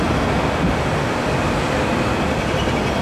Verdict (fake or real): real